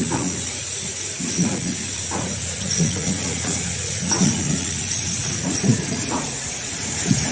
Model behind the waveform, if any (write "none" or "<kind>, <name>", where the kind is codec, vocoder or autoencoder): vocoder, Vocos